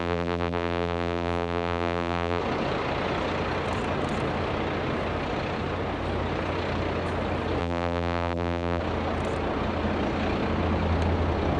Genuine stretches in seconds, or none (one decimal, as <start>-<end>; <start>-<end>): 2.4-7.6; 8.8-11.6